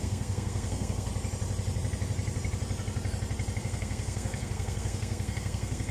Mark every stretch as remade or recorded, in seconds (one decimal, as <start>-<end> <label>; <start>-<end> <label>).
0.0-1.1 remade; 1.1-3.6 recorded; 3.6-5.9 remade